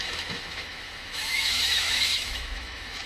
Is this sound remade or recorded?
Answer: remade